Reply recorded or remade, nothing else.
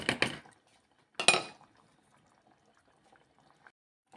recorded